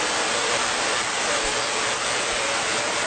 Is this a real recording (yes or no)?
yes